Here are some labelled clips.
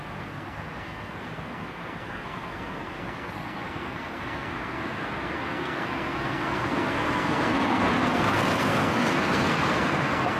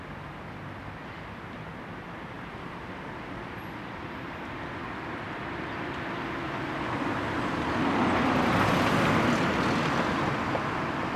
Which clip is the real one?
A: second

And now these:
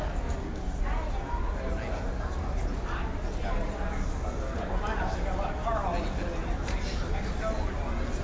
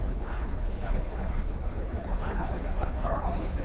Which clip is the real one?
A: first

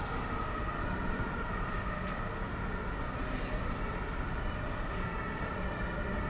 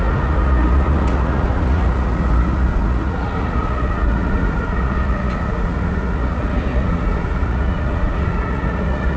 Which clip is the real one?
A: first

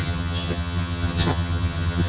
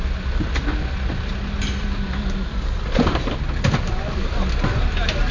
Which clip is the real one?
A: second